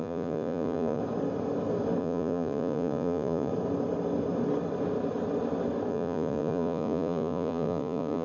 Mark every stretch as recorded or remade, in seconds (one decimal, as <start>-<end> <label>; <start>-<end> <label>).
0.0-1.0 remade; 1.0-2.0 recorded; 2.0-3.5 remade; 3.5-5.9 recorded; 5.9-8.2 remade